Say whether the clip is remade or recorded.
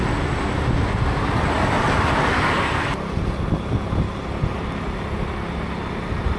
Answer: recorded